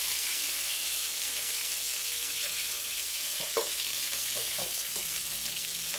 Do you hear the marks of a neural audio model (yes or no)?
yes